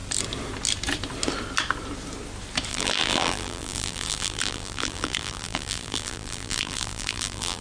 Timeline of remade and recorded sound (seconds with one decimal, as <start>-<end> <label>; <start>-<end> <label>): 0.0-2.7 recorded; 2.7-7.6 remade